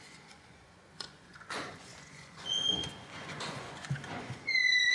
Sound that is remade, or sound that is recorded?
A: remade